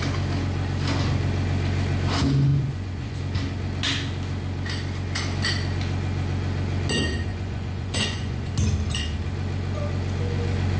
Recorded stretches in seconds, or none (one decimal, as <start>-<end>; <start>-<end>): 0.0-2.5; 3.2-7.3; 8.5-10.8